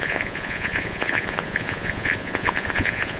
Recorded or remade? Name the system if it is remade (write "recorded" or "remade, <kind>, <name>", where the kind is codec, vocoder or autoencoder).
remade, vocoder, Vocos